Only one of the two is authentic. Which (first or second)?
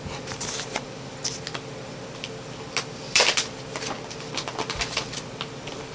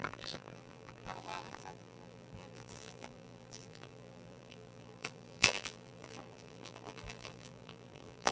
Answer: first